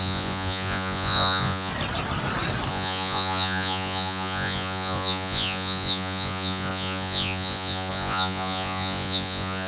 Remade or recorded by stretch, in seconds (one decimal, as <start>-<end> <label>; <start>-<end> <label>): 0.0-1.7 remade; 1.7-2.7 recorded; 2.7-9.7 remade